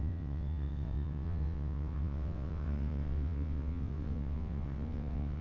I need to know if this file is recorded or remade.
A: remade